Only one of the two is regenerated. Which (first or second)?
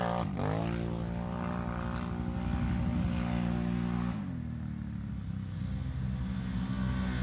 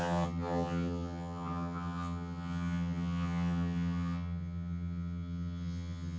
second